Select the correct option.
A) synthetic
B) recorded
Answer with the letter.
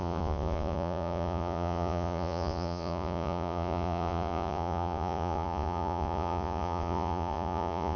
A